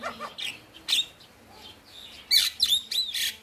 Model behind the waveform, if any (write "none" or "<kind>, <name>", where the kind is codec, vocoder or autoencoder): none